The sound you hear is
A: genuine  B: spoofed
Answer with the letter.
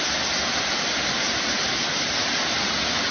A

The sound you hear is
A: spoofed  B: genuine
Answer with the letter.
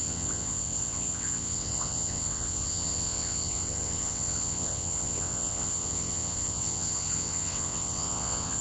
A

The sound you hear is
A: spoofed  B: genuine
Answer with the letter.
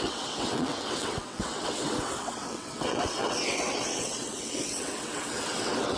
A